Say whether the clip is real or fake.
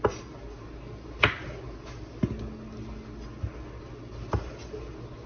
real